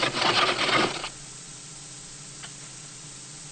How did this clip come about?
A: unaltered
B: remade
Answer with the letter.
B